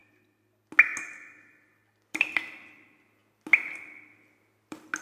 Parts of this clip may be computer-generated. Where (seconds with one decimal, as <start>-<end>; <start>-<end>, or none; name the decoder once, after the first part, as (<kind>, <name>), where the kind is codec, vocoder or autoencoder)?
1.8-2.5 (vocoder, BigVGAN v2)

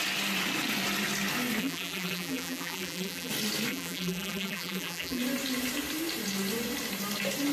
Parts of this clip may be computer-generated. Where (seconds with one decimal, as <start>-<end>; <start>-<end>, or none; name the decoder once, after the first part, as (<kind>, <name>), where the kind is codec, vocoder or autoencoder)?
1.6-3.3 (vocoder, BigVGAN v2); 3.7-5.2

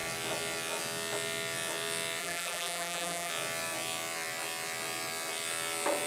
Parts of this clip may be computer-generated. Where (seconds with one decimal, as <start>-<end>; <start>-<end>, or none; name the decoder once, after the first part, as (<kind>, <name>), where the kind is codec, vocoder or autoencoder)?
2.2-3.3 (vocoder, BigVGAN v2)

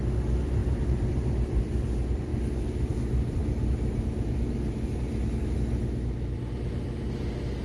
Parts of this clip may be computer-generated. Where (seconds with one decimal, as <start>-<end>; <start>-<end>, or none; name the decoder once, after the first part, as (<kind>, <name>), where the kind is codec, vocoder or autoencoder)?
0.6-1.6 (vocoder, BigVGAN v2)

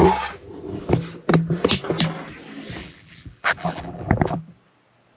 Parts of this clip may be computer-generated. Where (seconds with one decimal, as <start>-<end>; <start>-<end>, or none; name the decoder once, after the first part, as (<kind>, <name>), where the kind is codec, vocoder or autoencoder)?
2.8-4.4 (vocoder, BigVGAN v2)